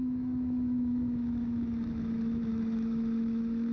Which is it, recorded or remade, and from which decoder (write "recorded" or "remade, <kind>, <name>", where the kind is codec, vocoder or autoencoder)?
remade, autoencoder, DAC-VAE